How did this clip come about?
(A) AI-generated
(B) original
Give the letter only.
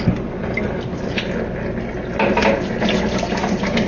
B